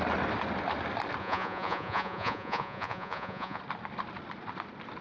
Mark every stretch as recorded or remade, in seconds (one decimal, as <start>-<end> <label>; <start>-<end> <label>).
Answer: 0.0-1.2 recorded; 1.2-3.6 remade; 3.6-5.0 recorded